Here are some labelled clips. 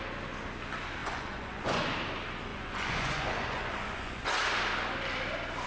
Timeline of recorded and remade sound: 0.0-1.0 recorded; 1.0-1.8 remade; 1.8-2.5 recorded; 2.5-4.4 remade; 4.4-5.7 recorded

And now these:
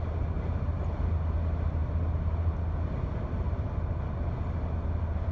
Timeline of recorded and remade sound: 0.0-5.3 recorded

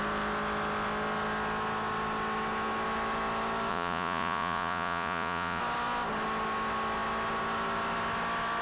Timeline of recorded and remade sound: 0.0-3.7 recorded; 3.7-5.6 remade; 5.6-8.6 recorded

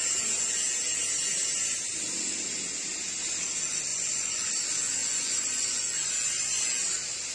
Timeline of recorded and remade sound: 0.0-3.9 recorded; 3.9-4.5 remade; 4.5-5.0 recorded; 5.0-6.1 remade; 6.1-7.3 recorded

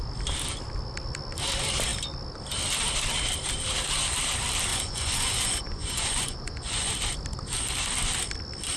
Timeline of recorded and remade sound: 0.0-4.7 recorded; 4.7-6.9 remade; 6.9-8.8 recorded

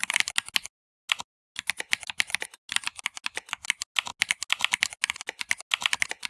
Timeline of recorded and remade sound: 0.0-6.3 recorded

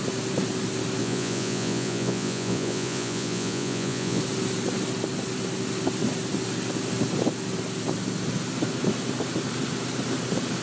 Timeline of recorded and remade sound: 0.0-1.0 recorded; 1.0-4.2 remade; 4.2-10.6 recorded

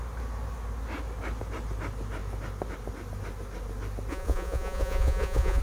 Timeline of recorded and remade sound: 0.0-4.1 recorded; 4.1-5.6 remade